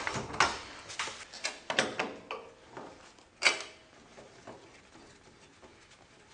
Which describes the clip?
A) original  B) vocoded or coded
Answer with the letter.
A